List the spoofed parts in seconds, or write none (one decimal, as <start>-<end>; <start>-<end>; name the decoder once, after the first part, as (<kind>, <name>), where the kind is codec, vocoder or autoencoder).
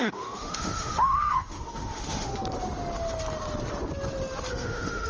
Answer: 0.0-2.3 (autoencoder, DAC-VAE); 4.5-5.1